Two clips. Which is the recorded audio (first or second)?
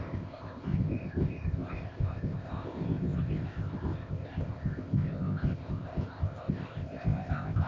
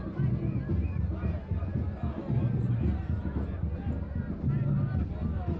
second